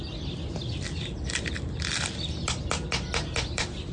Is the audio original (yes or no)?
yes